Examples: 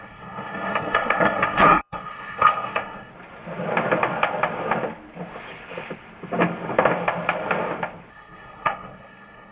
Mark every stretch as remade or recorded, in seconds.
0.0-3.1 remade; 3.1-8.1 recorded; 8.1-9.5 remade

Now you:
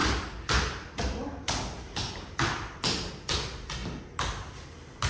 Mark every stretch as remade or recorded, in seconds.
0.0-5.1 recorded

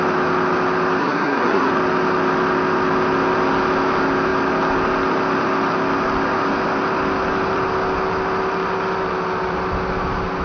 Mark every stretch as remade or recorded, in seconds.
0.0-1.0 recorded; 1.0-1.7 remade; 1.7-10.4 recorded

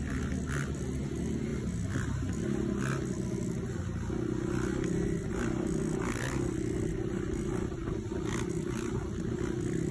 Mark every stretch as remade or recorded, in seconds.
0.0-9.9 recorded

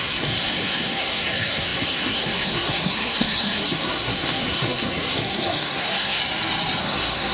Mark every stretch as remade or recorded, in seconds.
0.0-6.2 remade; 6.2-6.8 recorded; 6.8-7.3 remade

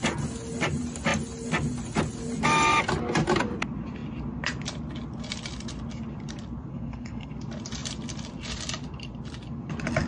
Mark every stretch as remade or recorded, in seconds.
0.0-6.7 recorded; 6.7-7.3 remade; 7.3-10.1 recorded